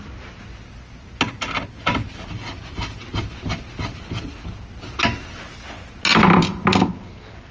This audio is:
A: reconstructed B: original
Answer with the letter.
B